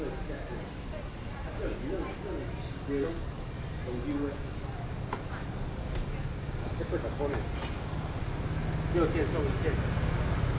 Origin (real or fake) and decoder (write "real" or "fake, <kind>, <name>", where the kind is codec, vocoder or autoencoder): real